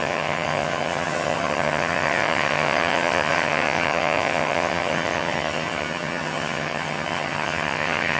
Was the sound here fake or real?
fake